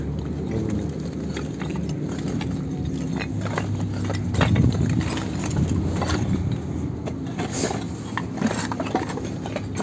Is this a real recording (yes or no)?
yes